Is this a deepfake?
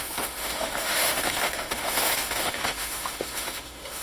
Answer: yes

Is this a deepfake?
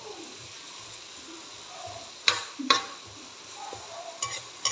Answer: no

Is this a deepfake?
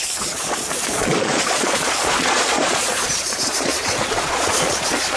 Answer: yes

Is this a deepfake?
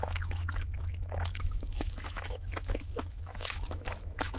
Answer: yes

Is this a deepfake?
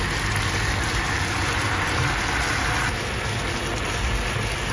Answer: no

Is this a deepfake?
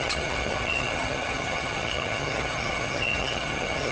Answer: yes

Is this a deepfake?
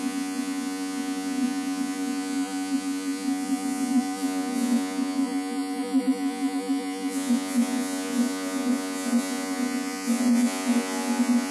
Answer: yes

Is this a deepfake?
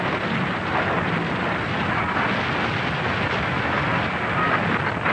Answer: no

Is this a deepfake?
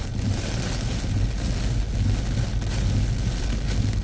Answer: no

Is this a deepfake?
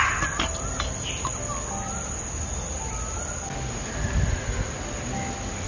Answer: no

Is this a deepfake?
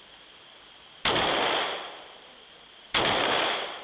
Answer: yes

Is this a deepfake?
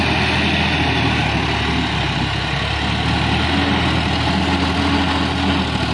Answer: no